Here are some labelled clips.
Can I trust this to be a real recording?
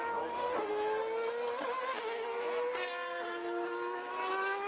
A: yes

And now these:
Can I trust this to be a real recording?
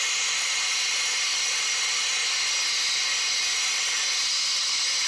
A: yes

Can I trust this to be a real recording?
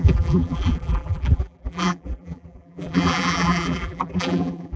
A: no